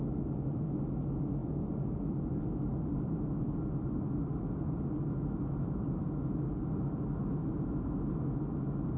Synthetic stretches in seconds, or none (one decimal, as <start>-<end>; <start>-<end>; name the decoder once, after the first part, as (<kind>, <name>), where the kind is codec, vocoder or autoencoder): 1.4-6.5 (vocoder, BigVGAN v2); 7.4-7.9